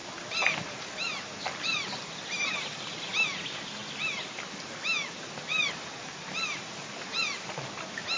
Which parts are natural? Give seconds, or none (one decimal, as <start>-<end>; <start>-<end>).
0.0-8.2